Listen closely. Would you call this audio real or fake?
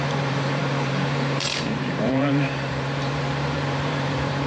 fake